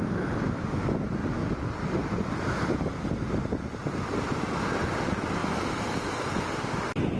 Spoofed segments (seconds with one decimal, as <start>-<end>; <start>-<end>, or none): none